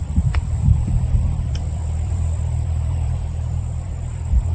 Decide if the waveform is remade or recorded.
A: remade